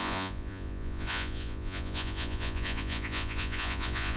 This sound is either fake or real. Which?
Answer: fake